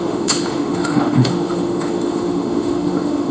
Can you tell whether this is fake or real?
fake